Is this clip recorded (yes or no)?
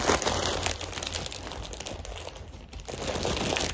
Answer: no